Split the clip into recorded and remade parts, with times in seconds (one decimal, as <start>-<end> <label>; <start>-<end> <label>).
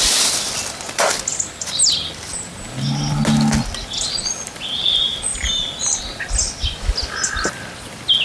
0.0-1.3 recorded; 1.3-2.3 remade; 2.3-8.2 recorded